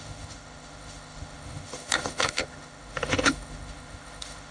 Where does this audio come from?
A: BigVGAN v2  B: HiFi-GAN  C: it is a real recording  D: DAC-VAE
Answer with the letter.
D